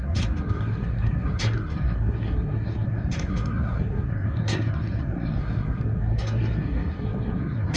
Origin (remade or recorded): remade